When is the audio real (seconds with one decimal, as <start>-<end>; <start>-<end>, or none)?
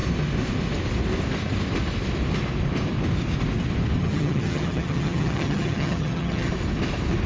0.0-4.0; 6.5-7.3